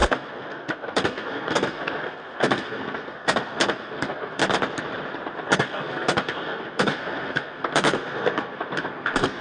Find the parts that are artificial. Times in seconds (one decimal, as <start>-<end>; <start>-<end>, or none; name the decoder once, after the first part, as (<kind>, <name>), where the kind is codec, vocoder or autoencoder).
0.0-4.4 (codec, SNAC); 5.4-9.4